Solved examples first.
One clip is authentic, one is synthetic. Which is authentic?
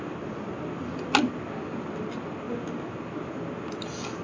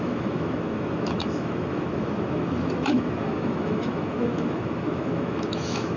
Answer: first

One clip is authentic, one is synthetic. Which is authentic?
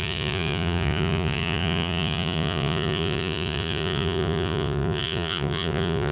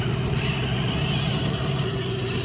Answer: second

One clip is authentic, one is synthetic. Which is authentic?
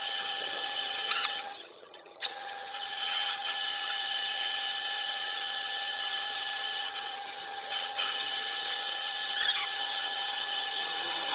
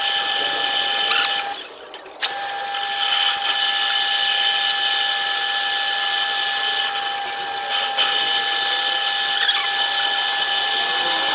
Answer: second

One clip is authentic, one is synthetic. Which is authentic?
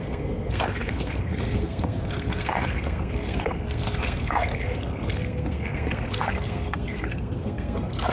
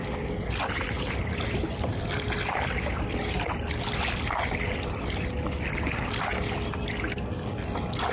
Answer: second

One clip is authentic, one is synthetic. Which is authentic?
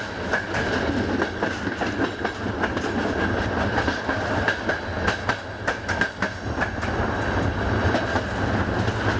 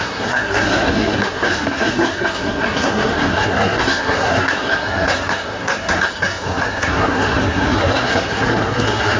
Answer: first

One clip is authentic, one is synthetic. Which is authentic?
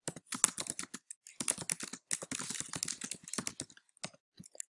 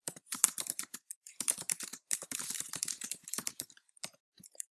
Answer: first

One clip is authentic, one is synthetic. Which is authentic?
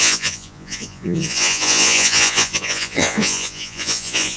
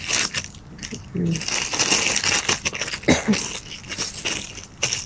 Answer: second